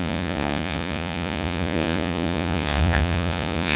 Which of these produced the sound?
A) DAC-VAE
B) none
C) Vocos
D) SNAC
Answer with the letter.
C